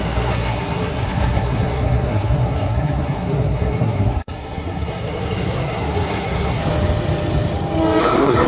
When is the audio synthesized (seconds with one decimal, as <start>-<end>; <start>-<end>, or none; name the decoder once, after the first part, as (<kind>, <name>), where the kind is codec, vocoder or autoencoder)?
0.0-6.6 (codec, SNAC); 8.0-8.5